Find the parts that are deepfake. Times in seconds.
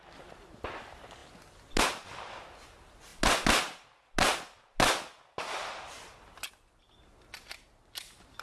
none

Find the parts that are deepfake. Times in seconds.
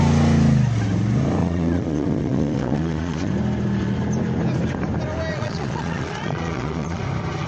1.4-3.3 (vocoder, Vocos); 5.3-7.0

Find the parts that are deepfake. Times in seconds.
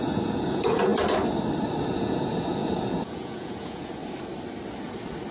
0.0-0.9 (vocoder, Vocos); 1.8-4.0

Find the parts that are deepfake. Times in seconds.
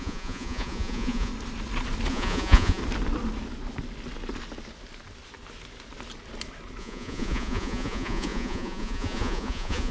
0.0-1.3 (vocoder, Vocos); 2.1-2.8; 6.8-9.9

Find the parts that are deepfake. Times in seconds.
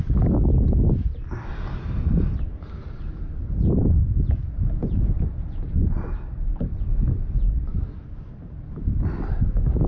3.4-5.9 (vocoder, Vocos)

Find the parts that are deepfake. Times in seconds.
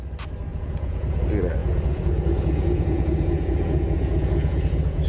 0.5-1.2 (vocoder, Vocos); 1.6-5.1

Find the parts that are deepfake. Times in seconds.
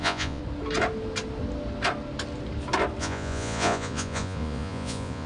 0.0-0.4 (vocoder, Vocos); 3.0-5.3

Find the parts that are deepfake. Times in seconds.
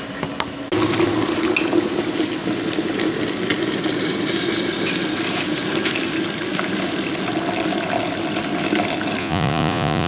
9.2-10.1 (vocoder, Vocos)